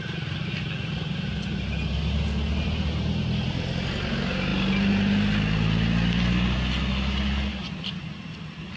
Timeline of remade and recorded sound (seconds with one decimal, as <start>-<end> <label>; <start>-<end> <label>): 0.0-8.8 recorded